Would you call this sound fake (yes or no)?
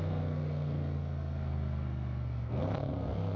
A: yes